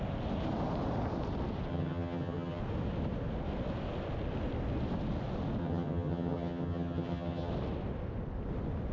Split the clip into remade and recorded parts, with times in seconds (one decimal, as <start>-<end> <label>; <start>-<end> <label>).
0.0-1.7 recorded; 1.7-2.6 remade; 2.6-5.6 recorded; 5.6-7.5 remade; 7.5-8.9 recorded